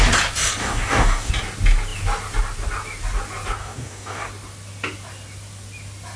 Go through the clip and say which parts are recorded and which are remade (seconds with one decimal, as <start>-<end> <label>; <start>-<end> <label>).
0.0-0.6 recorded; 0.6-1.3 remade; 1.3-3.6 recorded; 3.6-4.3 remade; 4.3-6.2 recorded